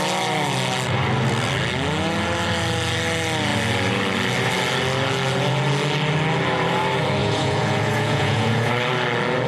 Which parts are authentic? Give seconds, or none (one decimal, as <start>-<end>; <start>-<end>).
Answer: 0.0-7.2; 8.7-9.5